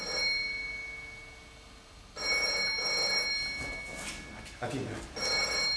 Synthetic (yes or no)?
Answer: no